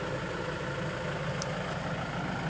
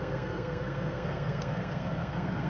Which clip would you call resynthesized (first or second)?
second